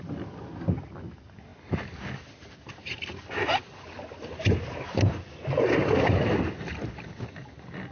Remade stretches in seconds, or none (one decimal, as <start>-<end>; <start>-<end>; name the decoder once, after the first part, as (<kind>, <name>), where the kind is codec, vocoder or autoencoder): none